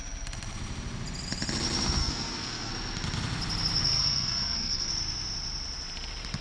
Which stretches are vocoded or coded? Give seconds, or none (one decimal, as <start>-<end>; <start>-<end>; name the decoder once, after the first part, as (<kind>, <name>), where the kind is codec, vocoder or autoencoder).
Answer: 2.0-2.7 (codec, SNAC); 3.8-4.9

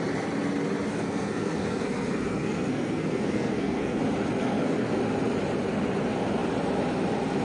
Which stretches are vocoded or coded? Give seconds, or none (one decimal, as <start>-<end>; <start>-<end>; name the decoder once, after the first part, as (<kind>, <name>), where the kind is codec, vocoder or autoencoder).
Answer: 0.9-4.0 (codec, SNAC); 4.4-5.0